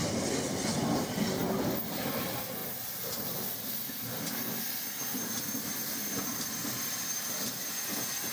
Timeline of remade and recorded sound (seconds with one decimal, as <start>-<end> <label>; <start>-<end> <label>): 0.0-8.3 recorded